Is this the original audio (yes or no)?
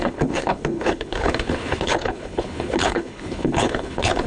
no